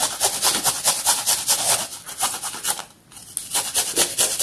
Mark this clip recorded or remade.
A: recorded